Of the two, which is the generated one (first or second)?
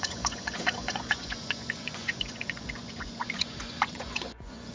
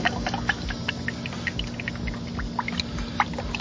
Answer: first